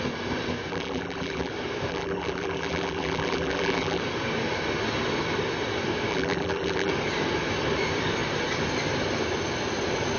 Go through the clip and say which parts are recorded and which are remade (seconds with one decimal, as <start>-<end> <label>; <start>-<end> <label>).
0.0-0.7 recorded; 0.7-1.5 remade; 1.5-1.9 recorded; 1.9-4.0 remade; 4.0-6.1 recorded; 6.1-6.9 remade; 6.9-10.2 recorded